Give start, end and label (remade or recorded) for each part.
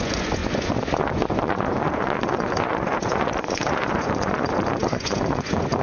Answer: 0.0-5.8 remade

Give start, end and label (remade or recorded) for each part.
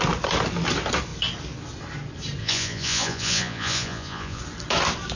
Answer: 0.0-2.4 recorded; 2.4-4.4 remade; 4.4-5.2 recorded